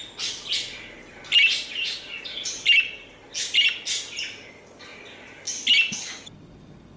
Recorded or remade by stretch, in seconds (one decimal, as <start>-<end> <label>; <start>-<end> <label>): 0.0-7.0 recorded